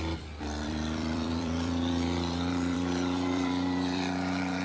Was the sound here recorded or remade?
remade